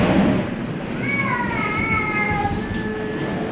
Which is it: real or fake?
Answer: real